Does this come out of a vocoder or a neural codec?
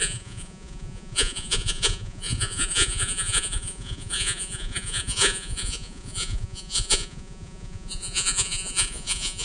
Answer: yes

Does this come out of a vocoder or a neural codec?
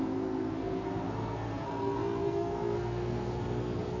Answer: yes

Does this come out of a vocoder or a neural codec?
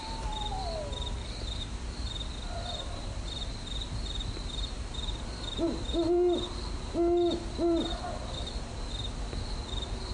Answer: no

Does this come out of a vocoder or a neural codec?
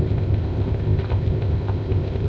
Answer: yes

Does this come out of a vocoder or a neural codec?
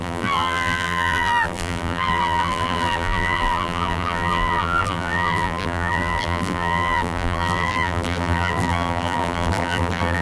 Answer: yes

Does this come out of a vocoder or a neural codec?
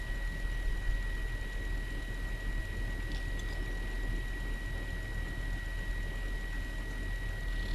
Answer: no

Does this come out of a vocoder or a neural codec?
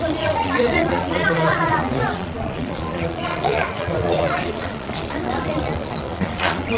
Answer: yes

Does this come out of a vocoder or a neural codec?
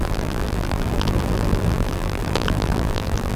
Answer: yes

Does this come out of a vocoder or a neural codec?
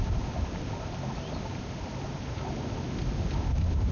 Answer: no